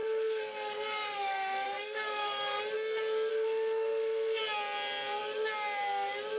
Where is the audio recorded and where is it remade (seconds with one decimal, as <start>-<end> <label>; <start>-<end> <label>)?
0.0-2.6 remade; 2.6-3.3 recorded; 3.3-4.4 remade; 4.4-6.4 recorded